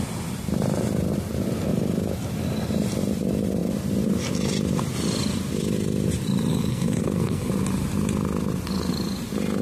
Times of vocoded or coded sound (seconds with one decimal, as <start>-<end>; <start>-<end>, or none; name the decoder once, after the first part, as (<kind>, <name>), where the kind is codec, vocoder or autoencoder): 6.5-7.5 (codec, SNAC)